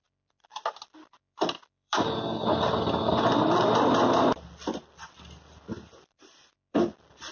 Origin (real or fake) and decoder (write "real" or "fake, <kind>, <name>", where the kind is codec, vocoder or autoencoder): fake, vocoder, BigVGAN v2